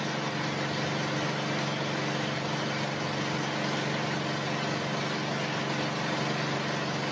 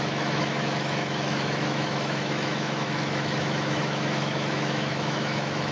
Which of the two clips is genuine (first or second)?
first